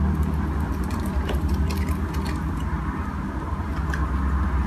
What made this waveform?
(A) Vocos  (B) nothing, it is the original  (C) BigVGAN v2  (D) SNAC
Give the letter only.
B